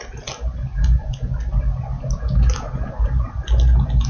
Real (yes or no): yes